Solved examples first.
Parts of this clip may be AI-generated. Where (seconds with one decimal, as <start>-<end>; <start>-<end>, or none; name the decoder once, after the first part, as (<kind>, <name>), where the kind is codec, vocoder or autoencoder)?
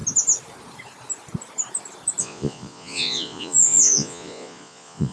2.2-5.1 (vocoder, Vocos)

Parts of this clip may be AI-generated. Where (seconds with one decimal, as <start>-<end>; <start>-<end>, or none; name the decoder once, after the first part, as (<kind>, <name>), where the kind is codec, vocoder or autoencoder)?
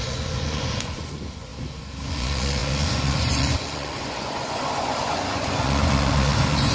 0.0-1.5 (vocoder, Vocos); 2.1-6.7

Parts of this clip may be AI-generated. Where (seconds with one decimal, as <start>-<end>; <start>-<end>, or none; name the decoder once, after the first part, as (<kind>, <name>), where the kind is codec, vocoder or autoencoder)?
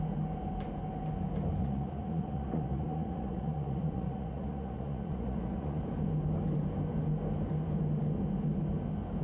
1.6-5.8 (vocoder, Vocos)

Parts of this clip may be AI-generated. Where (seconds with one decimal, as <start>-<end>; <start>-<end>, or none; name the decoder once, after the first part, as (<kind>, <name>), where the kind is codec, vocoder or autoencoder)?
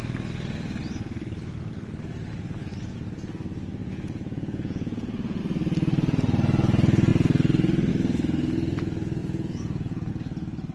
3.8-5.4 (vocoder, Vocos); 9.2-10.1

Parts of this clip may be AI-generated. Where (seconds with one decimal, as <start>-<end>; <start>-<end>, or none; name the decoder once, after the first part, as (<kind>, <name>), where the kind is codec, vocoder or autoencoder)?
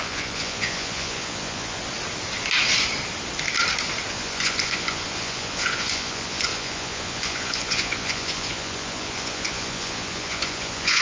0.0-1.8 (vocoder, Vocos); 4.1-11.0